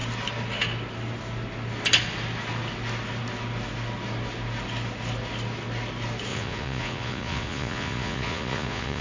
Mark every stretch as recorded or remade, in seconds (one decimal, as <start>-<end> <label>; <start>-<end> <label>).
0.0-6.3 recorded; 6.3-9.0 remade